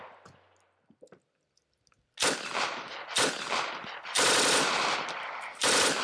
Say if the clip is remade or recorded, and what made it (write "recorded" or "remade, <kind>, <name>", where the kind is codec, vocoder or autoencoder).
recorded